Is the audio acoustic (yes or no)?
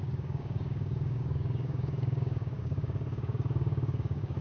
no